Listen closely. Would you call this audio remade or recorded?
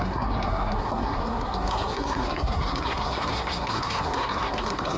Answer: remade